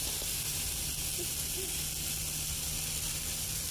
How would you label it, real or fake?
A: real